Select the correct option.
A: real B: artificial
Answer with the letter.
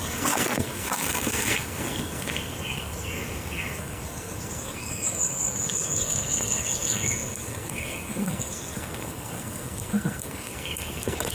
B